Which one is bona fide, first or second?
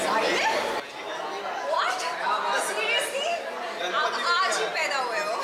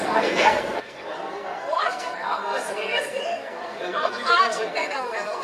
first